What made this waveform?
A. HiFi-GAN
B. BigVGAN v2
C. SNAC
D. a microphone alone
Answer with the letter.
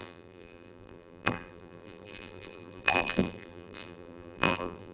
B